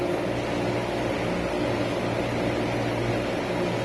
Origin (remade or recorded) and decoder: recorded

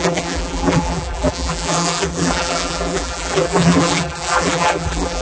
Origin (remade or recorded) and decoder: remade, vocoder, BigVGAN v2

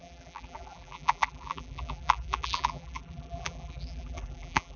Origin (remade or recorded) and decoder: remade, vocoder, BigVGAN v2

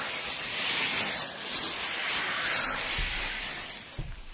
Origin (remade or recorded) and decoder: remade, vocoder, BigVGAN v2